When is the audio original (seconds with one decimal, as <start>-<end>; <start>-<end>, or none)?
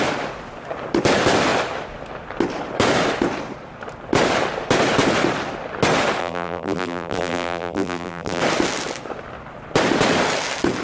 0.0-6.2; 8.4-10.8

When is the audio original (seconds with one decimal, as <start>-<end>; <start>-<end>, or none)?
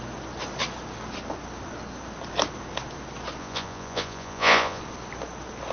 0.0-3.4; 4.8-5.7